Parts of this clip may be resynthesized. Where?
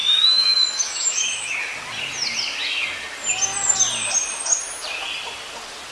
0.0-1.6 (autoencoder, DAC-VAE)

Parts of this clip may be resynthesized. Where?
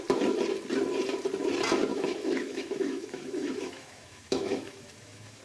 1.9-5.4 (autoencoder, DAC-VAE)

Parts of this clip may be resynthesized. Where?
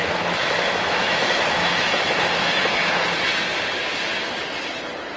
0.0-3.1 (autoencoder, DAC-VAE)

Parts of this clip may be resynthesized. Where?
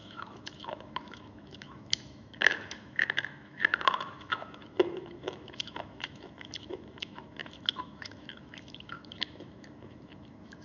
0.0-10.6 (autoencoder, DAC-VAE)